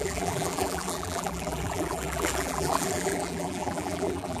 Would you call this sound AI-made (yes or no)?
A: yes